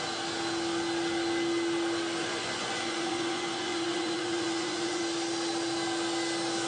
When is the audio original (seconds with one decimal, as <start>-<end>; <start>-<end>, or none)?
0.0-2.2; 5.0-6.7